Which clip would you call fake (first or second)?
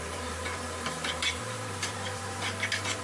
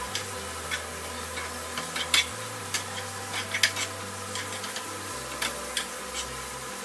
first